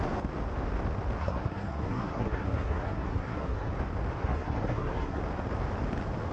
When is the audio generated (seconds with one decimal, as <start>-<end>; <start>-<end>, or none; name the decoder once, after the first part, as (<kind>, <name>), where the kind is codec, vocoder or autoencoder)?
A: 1.2-3.7 (codec, SNAC); 4.2-5.2